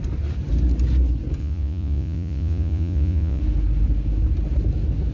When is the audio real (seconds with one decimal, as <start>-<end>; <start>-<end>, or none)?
0.0-1.4; 3.4-5.1